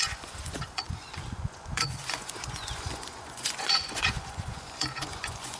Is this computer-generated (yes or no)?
yes